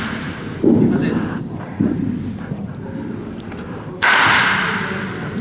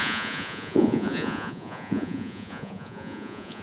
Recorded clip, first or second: first